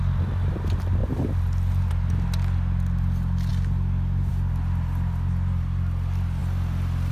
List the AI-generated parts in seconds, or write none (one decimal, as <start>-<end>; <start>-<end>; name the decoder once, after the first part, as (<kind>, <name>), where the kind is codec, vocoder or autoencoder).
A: none